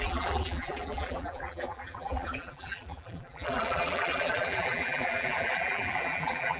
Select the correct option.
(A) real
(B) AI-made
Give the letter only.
B